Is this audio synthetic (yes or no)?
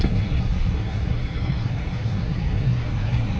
yes